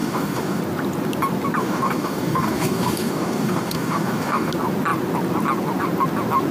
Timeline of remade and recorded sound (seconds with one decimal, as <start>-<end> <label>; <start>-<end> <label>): 0.0-0.6 remade; 0.6-1.6 recorded; 1.6-4.5 remade; 4.5-6.5 recorded